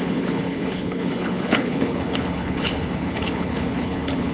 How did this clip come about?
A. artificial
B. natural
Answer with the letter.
A